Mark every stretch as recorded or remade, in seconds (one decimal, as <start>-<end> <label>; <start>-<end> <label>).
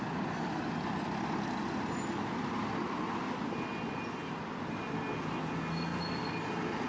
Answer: 0.0-6.9 recorded